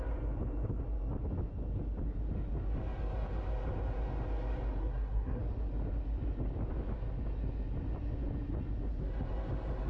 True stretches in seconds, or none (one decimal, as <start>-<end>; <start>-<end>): 0.0-4.8; 5.4-9.9